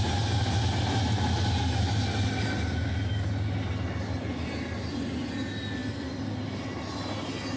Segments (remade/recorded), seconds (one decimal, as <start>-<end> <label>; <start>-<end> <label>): 0.0-7.6 recorded